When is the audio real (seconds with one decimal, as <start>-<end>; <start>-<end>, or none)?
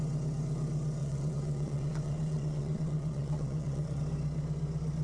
0.0-1.0; 4.0-5.0